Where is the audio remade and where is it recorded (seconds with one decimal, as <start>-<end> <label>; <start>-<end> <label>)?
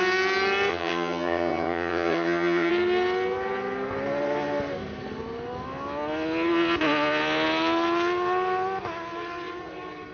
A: 0.0-0.7 recorded; 0.7-2.7 remade; 2.7-10.1 recorded